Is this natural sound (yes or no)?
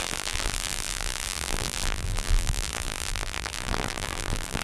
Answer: no